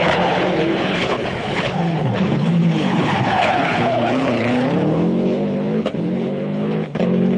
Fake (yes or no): yes